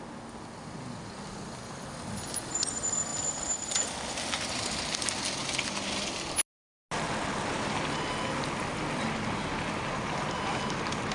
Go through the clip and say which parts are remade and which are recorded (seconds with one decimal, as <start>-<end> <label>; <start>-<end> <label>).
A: 0.0-11.1 recorded